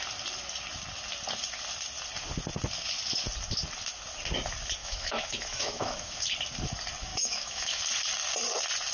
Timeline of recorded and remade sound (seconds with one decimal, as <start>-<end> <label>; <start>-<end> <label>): 0.0-4.8 recorded; 4.8-6.2 remade; 6.2-7.1 recorded; 7.1-7.8 remade; 7.8-8.9 recorded